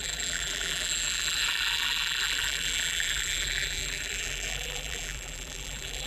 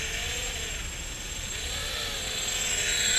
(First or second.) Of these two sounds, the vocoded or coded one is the first